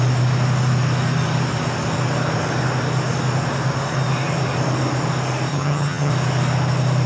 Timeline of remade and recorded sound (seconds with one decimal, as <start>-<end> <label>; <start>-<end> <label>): 0.0-5.5 recorded; 5.5-6.1 remade; 6.1-7.1 recorded